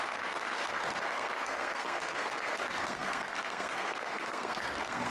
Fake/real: fake